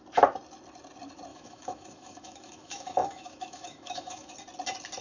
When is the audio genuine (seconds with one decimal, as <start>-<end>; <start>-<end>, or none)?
0.0-1.3; 4.3-5.0